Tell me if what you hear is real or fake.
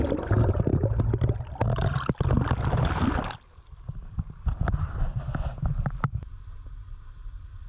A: real